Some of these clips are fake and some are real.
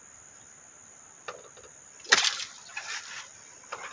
real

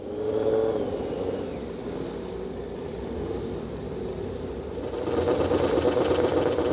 real